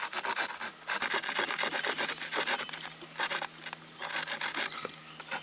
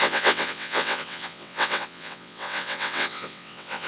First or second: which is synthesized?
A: second